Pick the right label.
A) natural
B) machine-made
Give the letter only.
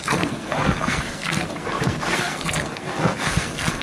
B